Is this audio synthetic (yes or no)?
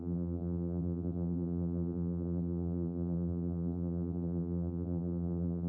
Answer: yes